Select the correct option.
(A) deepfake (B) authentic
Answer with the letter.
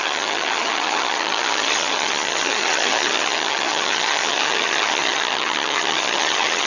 A